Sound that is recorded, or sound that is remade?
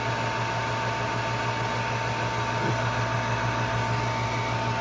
recorded